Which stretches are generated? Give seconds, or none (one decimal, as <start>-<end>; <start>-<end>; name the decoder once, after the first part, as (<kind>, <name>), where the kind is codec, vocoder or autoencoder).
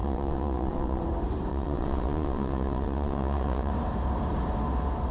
0.0-1.0 (vocoder, WaveNeXt); 1.5-3.7